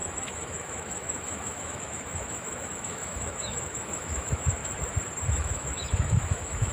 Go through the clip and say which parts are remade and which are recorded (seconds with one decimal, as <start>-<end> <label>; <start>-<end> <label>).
0.0-4.6 remade; 4.6-5.3 recorded; 5.3-6.7 remade